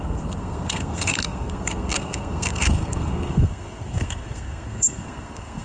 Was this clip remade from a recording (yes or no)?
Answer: yes